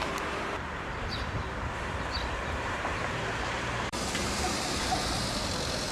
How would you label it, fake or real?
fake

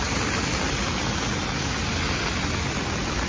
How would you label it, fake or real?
real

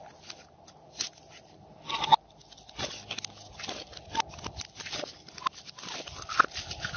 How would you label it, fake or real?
real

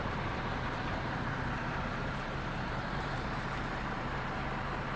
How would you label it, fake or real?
fake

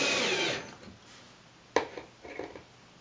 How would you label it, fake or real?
real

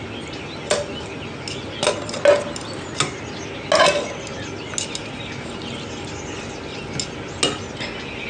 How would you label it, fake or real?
real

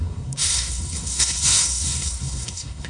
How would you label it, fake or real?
fake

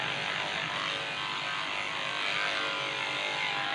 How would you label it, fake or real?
real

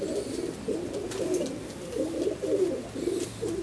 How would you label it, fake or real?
real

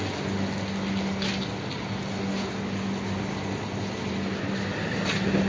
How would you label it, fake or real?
real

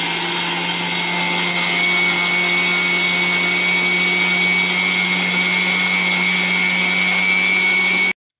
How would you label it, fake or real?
real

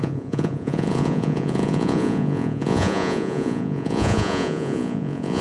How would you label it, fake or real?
fake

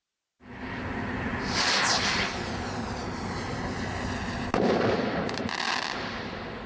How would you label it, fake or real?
real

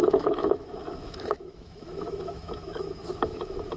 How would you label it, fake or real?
fake